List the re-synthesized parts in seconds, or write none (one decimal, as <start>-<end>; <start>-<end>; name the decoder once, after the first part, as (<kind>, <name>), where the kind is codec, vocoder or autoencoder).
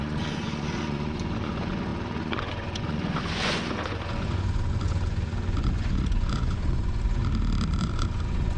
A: 0.0-7.2 (vocoder, Vocos); 7.8-8.6